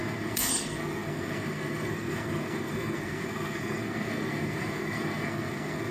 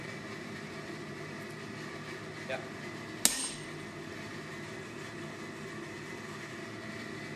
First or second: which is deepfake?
first